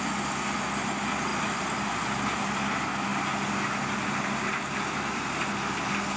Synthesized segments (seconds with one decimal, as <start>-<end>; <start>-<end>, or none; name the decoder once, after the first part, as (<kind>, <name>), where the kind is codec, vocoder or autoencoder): none